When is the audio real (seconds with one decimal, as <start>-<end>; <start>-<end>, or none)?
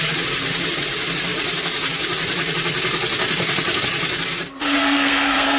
0.0-4.8